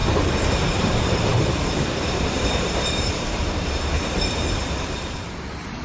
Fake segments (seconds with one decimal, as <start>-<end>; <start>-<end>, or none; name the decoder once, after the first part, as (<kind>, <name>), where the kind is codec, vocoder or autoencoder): 0.6-5.8 (vocoder, BigVGAN v2)

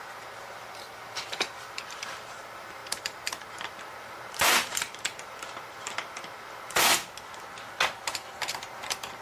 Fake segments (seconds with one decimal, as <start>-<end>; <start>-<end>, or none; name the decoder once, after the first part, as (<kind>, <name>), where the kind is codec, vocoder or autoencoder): 0.0-6.9 (vocoder, BigVGAN v2); 8.4-9.2

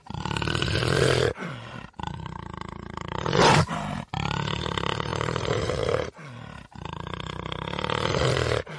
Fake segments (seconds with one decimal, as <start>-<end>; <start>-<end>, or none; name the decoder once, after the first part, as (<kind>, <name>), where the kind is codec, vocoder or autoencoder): 5.1-5.9 (vocoder, BigVGAN v2)

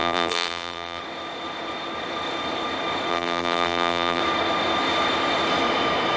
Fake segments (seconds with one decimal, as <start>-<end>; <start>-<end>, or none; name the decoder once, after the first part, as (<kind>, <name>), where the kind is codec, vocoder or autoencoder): 0.0-1.0 (vocoder, BigVGAN v2); 3.1-4.2

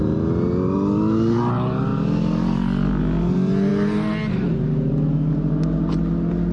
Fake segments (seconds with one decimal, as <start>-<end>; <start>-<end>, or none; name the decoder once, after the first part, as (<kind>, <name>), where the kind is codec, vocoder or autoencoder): none

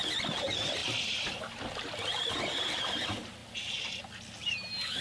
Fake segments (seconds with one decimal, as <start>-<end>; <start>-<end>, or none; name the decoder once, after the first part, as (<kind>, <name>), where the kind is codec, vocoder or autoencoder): 0.8-1.4 (vocoder, BigVGAN v2); 2.1-2.8; 3.4-4.0

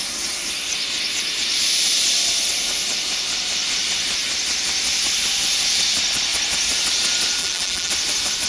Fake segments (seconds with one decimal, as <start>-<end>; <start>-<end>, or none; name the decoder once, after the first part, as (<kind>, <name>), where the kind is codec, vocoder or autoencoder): 7.4-7.9 (vocoder, BigVGAN v2)